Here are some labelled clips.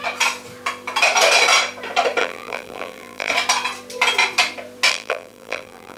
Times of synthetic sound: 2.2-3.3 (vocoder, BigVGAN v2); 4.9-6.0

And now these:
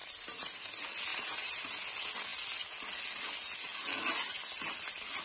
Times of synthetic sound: 0.0-0.7 (vocoder, BigVGAN v2); 1.1-1.7

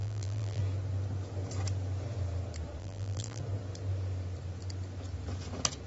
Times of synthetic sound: 0.0-0.6 (vocoder, BigVGAN v2); 2.8-3.4

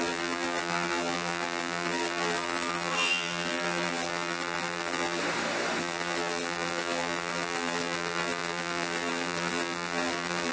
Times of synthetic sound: 0.0-5.2 (vocoder, BigVGAN v2); 5.8-10.5

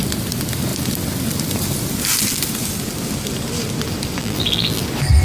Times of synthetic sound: 4.2-4.8 (vocoder, BigVGAN v2)

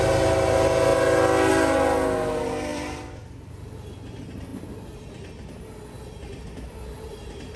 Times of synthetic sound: 2.7-3.5 (vocoder, BigVGAN v2)

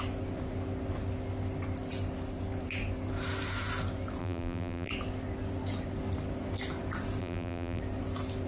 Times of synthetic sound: 4.2-4.9 (vocoder, BigVGAN v2); 7.2-7.8

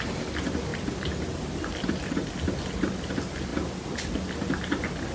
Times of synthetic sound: 0.7-2.0 (vocoder, BigVGAN v2); 3.5-4.6